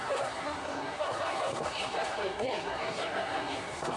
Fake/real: fake